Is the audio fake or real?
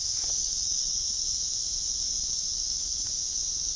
fake